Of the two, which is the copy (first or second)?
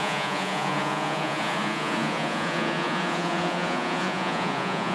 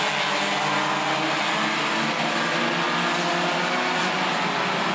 first